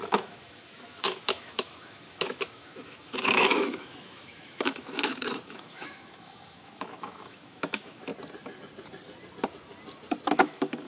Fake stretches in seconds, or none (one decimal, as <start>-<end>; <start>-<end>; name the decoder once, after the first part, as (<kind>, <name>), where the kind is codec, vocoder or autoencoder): 0.0-8.1 (autoencoder, DAC-VAE); 10.3-10.9